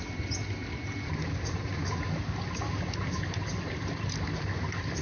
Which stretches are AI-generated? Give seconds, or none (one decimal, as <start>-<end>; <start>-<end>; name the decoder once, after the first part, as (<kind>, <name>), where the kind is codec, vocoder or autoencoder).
none